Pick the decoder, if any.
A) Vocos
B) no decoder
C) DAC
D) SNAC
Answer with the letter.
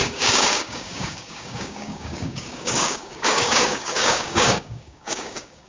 C